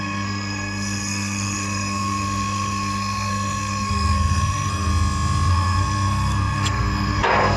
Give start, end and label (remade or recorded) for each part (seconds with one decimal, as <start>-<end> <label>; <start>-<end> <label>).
0.0-4.9 remade; 4.9-5.5 recorded; 5.5-7.6 remade